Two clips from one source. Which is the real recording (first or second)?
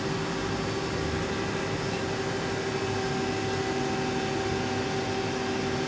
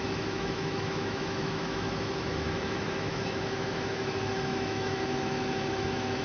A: first